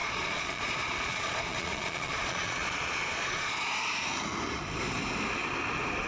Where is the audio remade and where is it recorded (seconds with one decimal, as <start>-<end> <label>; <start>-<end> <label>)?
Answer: 0.0-3.7 remade; 3.7-6.1 recorded